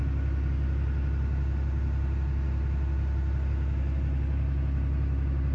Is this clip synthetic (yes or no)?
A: no